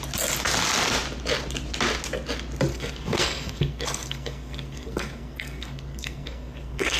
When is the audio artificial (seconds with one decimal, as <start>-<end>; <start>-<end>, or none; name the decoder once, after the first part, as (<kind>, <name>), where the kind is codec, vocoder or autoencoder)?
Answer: 2.7-7.0 (codec, SNAC)

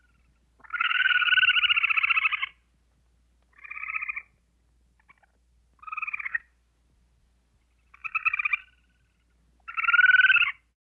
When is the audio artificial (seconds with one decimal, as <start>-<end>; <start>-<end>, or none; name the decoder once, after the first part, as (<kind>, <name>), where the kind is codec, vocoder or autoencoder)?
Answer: 0.8-1.3 (codec, SNAC)

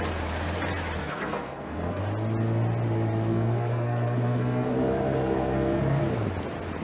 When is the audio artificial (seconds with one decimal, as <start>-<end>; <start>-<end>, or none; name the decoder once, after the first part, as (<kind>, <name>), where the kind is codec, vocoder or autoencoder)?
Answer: 1.0-2.0 (codec, SNAC); 3.3-6.0

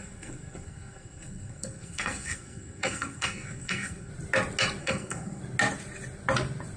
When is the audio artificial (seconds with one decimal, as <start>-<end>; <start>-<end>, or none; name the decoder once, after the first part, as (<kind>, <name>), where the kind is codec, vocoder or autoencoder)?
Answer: 0.0-4.1 (codec, SNAC); 4.8-5.4